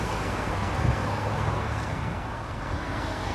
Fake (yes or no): yes